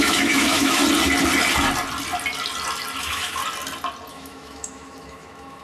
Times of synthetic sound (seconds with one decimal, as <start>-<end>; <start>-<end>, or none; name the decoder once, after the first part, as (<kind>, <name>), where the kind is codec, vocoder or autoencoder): 0.0-0.8 (autoencoder, DAC-VAE); 3.0-3.4; 4.1-5.6